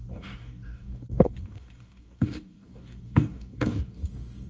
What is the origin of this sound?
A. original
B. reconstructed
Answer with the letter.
B